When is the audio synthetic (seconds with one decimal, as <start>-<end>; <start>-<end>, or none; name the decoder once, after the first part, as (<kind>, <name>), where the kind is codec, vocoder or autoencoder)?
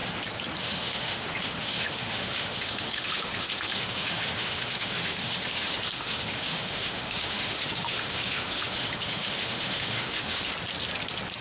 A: 0.6-10.5 (autoencoder, DAC-VAE)